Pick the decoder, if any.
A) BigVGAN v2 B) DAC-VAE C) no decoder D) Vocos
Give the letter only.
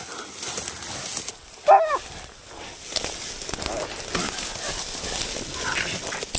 C